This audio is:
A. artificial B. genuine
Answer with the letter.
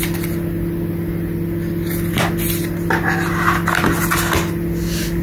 B